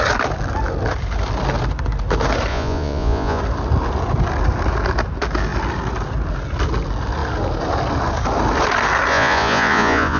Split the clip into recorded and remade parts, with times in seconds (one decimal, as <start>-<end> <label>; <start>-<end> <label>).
0.0-2.5 recorded; 2.5-3.4 remade; 3.4-9.1 recorded; 9.1-10.2 remade